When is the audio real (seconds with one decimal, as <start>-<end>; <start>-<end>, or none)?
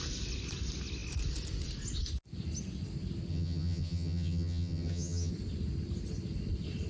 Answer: 0.0-3.3; 5.3-6.9